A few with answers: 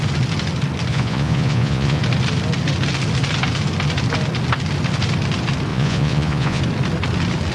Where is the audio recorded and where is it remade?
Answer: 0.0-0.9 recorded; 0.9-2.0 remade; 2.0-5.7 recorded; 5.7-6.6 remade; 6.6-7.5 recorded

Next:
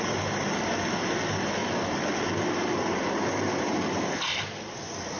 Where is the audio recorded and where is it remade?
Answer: 0.0-5.2 recorded

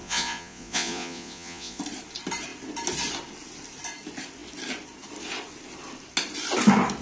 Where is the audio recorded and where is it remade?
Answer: 0.0-1.8 remade; 1.8-7.0 recorded

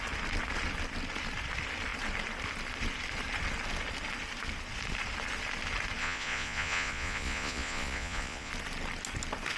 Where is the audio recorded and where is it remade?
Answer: 0.0-6.0 recorded; 6.0-8.5 remade; 8.5-9.6 recorded

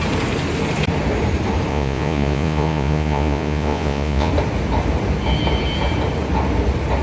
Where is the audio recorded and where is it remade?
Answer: 0.0-1.7 recorded; 1.7-4.3 remade; 4.3-7.0 recorded